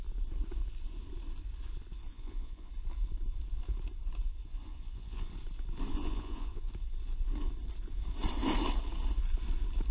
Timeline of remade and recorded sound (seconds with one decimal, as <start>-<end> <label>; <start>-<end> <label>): 0.0-2.1 recorded; 2.1-2.7 remade; 2.7-4.4 recorded; 4.4-5.3 remade; 5.3-5.9 recorded; 5.9-6.7 remade; 6.7-9.9 recorded